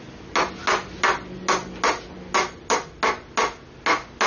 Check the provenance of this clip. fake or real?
real